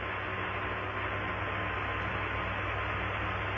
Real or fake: real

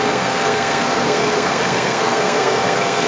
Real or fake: fake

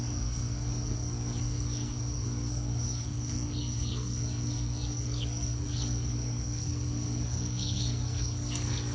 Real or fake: fake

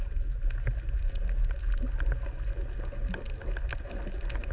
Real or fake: real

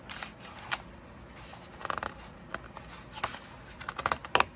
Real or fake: real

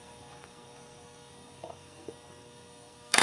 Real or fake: fake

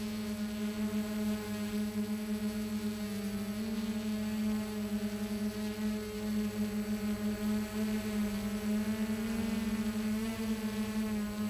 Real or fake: real